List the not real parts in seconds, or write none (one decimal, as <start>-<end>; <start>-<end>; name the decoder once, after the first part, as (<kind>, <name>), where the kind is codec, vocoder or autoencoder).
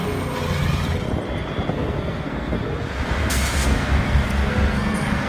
1.7-2.6 (codec, SNAC); 3.2-5.3